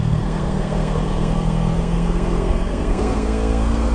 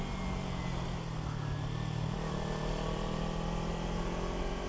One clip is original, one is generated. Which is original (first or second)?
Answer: second